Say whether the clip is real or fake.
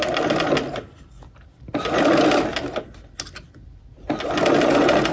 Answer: real